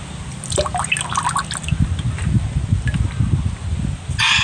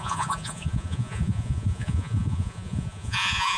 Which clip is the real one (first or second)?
first